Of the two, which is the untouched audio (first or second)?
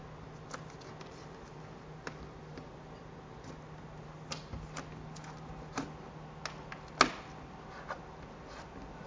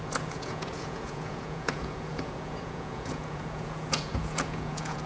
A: first